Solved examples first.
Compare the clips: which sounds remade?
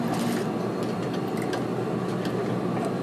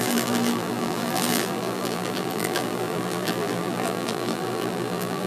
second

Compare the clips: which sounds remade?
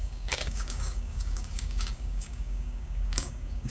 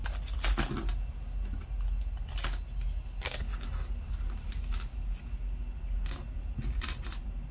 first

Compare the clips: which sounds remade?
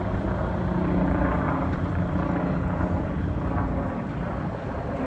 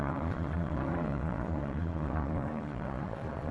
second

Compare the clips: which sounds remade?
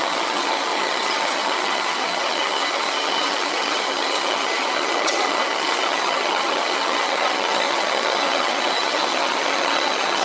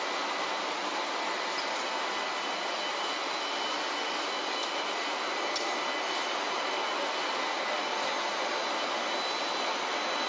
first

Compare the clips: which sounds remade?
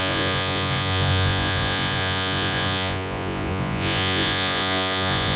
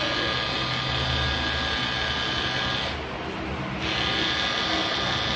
first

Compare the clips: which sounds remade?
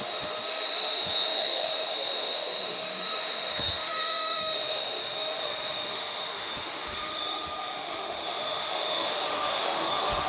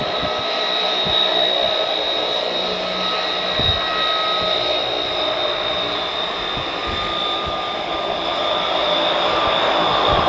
first